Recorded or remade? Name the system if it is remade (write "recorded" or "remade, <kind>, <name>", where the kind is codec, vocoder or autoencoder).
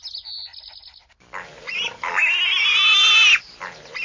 recorded